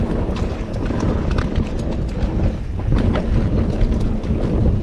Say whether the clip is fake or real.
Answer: real